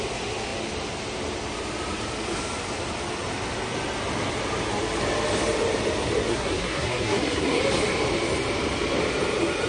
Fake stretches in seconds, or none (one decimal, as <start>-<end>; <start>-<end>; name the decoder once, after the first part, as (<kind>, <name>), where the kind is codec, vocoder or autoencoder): 6.3-7.6 (codec, SNAC)